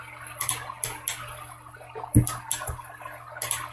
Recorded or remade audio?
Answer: recorded